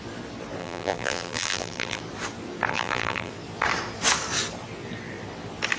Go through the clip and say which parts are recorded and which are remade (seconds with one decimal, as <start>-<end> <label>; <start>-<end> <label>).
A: 0.0-0.6 recorded; 0.6-2.0 remade; 2.0-2.7 recorded; 2.7-3.3 remade; 3.3-5.8 recorded